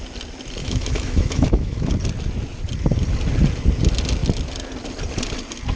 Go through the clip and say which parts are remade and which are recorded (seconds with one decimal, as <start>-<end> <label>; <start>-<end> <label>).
0.0-0.6 recorded; 0.6-1.9 remade; 1.9-5.8 recorded